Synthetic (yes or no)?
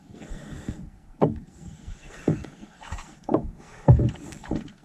yes